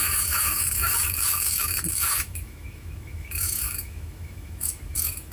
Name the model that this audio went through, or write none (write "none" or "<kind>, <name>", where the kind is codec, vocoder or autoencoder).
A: autoencoder, DAC-VAE